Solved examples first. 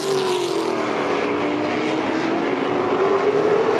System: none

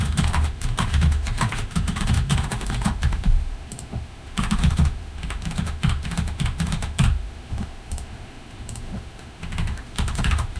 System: autoencoder, DAC-VAE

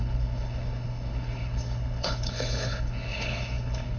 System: codec, HILCodec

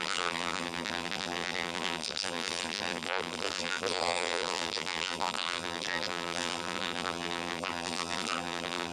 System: vocoder, BigVGAN v2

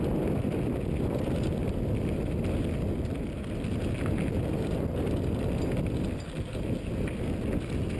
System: none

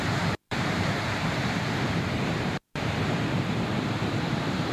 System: vocoder, BigVGAN v2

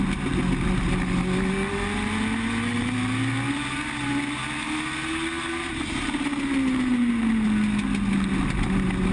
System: none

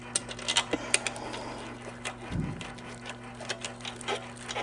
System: none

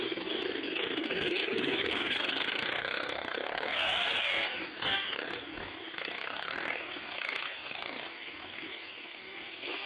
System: codec, DAC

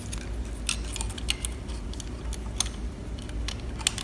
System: none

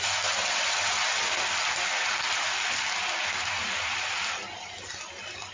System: none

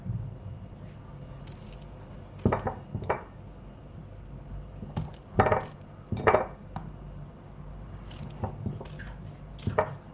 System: vocoder, BigVGAN v2